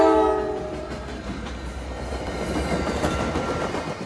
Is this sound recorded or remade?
recorded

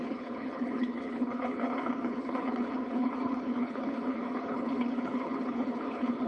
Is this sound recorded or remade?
remade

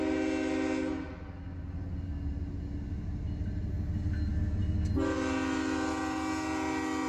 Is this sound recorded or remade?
recorded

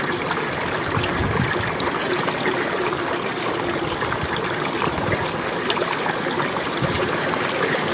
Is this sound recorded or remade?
recorded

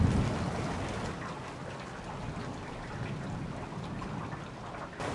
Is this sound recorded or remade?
recorded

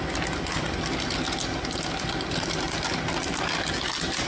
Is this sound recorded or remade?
recorded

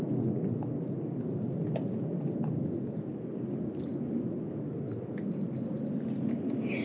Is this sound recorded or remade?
recorded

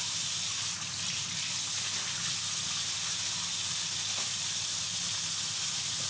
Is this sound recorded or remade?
recorded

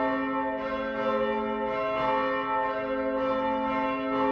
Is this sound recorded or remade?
recorded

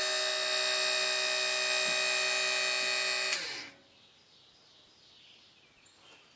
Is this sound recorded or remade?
recorded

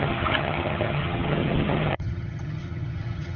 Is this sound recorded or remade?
remade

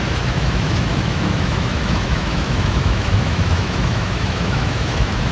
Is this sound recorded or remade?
remade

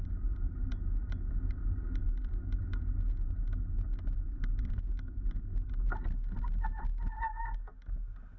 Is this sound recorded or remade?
recorded